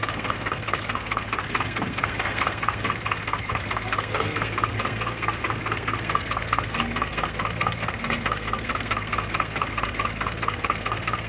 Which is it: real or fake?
fake